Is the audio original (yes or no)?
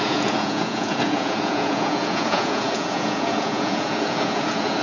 no